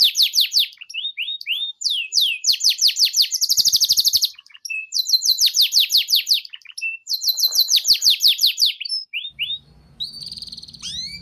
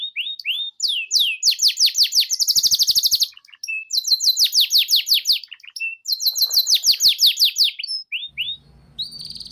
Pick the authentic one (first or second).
second